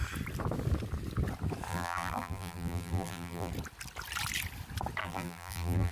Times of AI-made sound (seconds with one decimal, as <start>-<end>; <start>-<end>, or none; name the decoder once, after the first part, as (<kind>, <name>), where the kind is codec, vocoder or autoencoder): 1.7-3.5 (vocoder, BigVGAN v2); 5.0-5.9